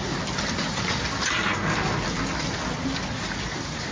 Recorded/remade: recorded